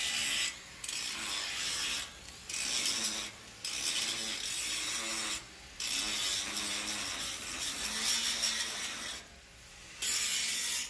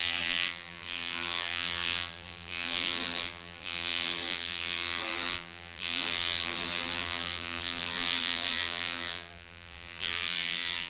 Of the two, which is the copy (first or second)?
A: second